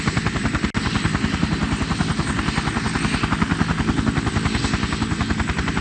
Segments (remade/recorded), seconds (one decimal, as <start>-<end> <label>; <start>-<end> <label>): 0.0-5.8 recorded